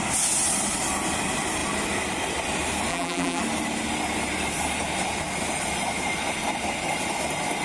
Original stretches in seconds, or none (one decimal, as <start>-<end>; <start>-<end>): 0.0-2.9; 3.4-7.6